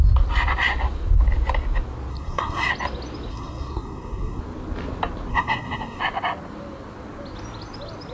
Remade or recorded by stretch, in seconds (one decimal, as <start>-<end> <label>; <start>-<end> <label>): 0.0-2.1 recorded; 2.1-2.7 remade; 2.7-3.3 recorded; 3.3-4.4 remade; 4.4-5.3 recorded; 5.3-6.0 remade; 6.0-8.1 recorded